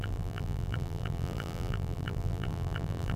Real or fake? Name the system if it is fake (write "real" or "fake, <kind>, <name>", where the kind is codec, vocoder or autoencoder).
fake, vocoder, BigVGAN v2